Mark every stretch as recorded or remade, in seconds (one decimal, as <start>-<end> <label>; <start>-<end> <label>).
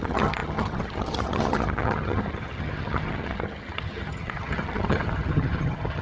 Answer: 0.0-6.0 remade